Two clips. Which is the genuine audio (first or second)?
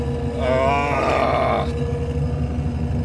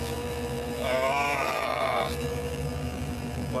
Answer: first